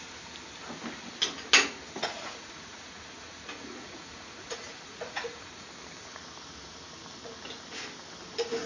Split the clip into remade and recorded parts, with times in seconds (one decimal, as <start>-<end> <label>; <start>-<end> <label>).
0.0-2.0 recorded; 2.0-5.7 remade; 5.7-8.7 recorded